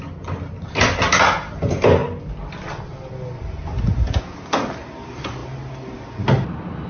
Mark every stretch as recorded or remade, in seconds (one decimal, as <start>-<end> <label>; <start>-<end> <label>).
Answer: 0.0-6.9 recorded